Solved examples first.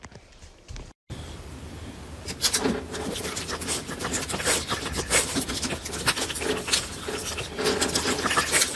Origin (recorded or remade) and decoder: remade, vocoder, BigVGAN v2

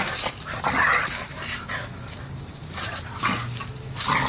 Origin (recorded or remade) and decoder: recorded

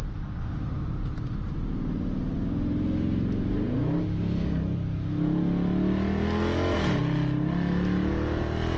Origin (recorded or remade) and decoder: recorded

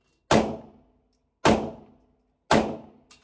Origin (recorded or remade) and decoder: recorded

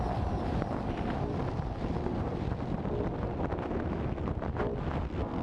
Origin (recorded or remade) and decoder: recorded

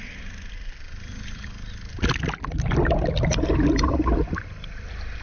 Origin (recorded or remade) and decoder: recorded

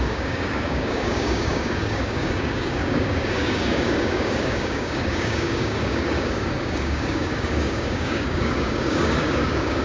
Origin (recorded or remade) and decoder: remade, codec, DAC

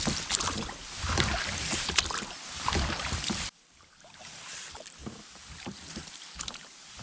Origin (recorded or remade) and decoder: recorded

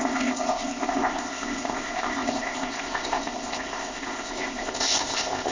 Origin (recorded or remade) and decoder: remade, codec, ZipCodec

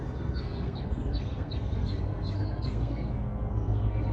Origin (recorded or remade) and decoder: remade, codec, SNAC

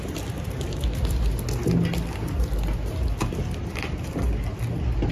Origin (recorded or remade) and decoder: recorded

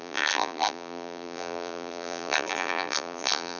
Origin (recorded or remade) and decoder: remade, vocoder, BigVGAN v2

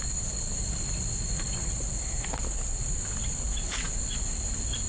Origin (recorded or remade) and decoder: recorded